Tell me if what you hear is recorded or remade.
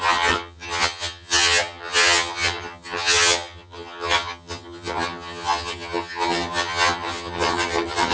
remade